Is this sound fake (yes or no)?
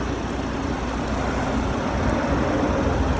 no